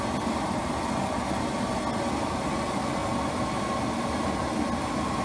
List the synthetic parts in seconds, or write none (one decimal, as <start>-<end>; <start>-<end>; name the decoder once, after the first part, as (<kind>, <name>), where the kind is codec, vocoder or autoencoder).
none